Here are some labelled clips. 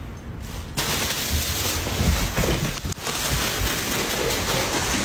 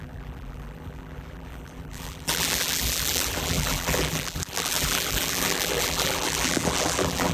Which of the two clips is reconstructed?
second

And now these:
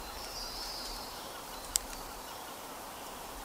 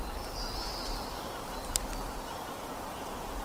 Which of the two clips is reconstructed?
first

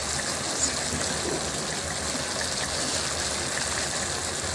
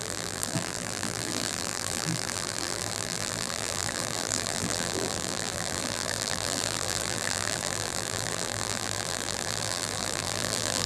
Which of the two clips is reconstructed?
second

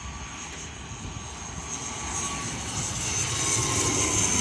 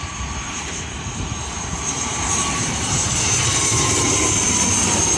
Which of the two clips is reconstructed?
second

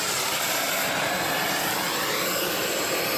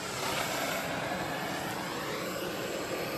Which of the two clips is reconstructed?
first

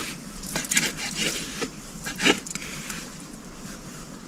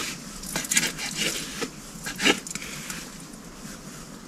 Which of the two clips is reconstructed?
first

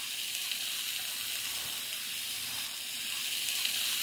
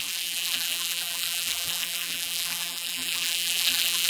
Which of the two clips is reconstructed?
second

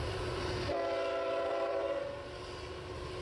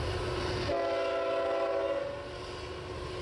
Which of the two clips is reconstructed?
first